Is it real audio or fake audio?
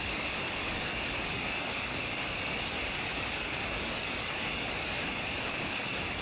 fake